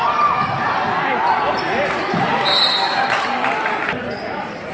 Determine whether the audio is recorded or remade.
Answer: recorded